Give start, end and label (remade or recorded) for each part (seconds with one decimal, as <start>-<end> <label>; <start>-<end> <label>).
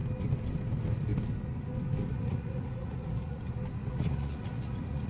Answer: 0.0-2.1 recorded; 2.1-3.4 remade; 3.4-3.8 recorded; 3.8-5.1 remade